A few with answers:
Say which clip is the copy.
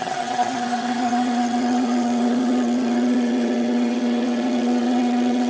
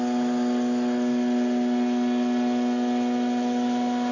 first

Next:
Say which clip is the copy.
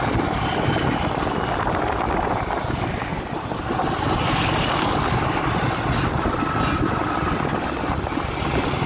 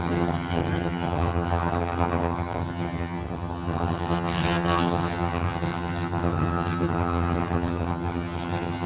second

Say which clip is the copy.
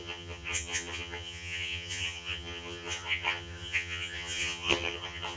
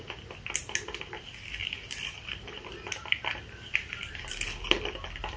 first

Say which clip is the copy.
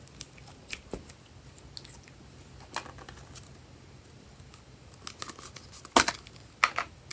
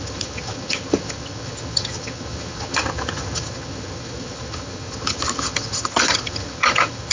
second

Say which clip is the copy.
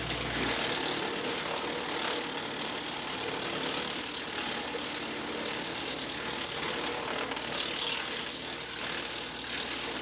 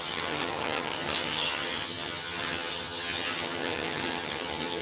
second